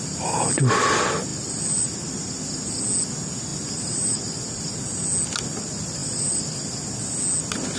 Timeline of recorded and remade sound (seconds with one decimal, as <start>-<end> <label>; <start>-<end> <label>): 0.0-1.3 recorded; 1.3-2.3 remade; 2.3-3.5 recorded; 3.5-4.2 remade; 4.2-6.0 recorded; 6.0-6.7 remade; 6.7-7.8 recorded